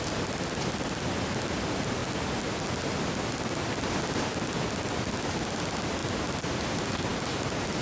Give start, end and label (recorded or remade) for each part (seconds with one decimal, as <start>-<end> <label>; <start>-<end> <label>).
0.0-2.0 remade; 2.0-5.6 recorded; 5.6-6.0 remade; 6.0-6.5 recorded; 6.5-7.1 remade; 7.1-7.8 recorded